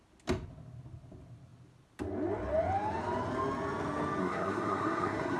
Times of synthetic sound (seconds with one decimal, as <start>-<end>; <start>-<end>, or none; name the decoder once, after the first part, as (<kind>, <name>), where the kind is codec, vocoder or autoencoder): 4.2-5.4 (codec, SNAC)